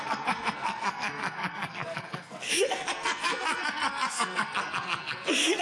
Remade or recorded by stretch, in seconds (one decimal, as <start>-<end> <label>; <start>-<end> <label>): 0.0-5.6 remade